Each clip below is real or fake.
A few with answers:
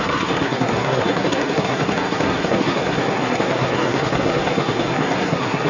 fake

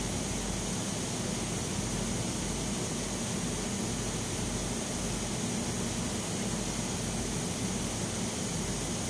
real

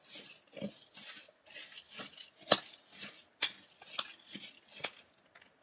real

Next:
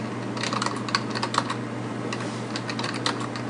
real